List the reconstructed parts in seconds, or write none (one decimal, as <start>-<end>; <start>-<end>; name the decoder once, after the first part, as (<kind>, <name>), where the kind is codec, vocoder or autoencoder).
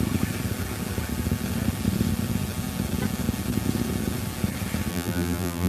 4.9-5.7 (vocoder, BigVGAN v2)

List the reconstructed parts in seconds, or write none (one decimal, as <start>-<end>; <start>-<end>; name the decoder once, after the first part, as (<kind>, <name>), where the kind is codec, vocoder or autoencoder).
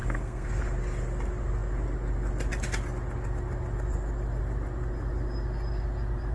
0.0-0.6 (codec, SNAC)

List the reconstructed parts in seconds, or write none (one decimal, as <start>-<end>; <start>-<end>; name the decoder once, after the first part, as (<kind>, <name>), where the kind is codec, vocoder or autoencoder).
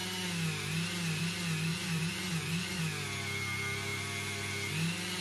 1.7-2.8 (vocoder, Vocos)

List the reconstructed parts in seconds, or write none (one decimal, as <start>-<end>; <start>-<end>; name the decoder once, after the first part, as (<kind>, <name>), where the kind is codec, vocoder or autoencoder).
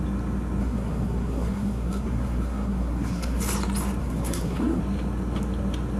0.6-3.4 (codec, SNAC); 4.0-4.8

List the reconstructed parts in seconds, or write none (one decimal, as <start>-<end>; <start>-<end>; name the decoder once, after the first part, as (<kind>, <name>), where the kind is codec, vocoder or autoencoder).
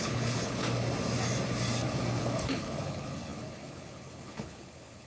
0.0-0.6 (codec, HILCodec); 2.2-5.1